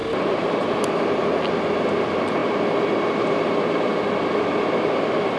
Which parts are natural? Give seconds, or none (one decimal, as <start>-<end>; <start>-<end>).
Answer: 0.0-5.4